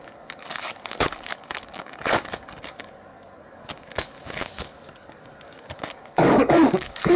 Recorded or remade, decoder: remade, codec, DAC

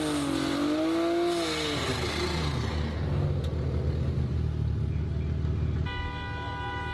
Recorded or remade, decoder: recorded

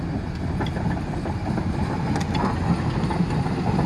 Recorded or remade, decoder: recorded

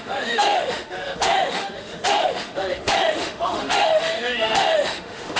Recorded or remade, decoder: remade, autoencoder, DAC-VAE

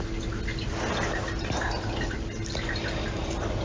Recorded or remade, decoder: recorded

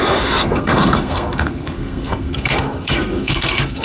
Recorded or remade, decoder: remade, codec, SNAC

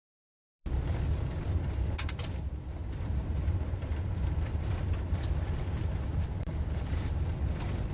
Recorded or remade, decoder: remade, vocoder, BigVGAN v2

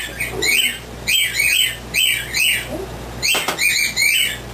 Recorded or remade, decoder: recorded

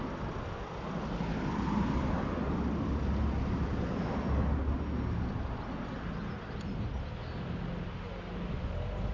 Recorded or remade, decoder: recorded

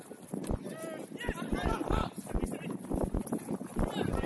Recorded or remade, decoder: recorded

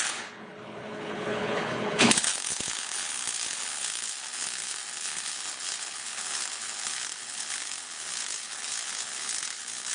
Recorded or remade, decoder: remade, codec, HILCodec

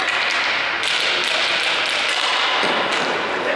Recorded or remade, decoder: recorded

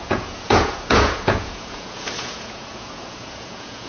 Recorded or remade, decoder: remade, vocoder, Vocos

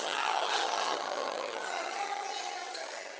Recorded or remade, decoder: remade, vocoder, HiFi-GAN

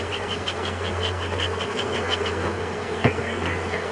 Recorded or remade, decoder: remade, codec, SNAC